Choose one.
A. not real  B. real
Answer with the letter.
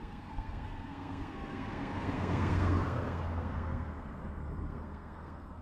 A